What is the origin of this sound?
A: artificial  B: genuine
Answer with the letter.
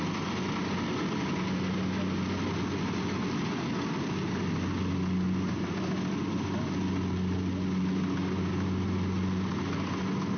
B